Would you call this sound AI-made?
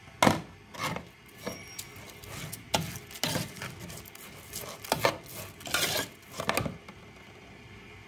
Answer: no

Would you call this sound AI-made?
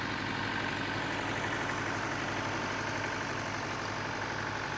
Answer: no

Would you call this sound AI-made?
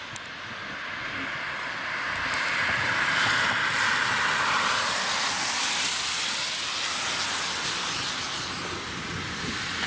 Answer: no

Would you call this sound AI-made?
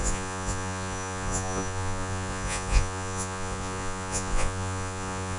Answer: yes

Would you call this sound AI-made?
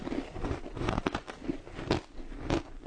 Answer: no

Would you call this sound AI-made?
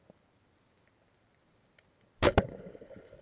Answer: no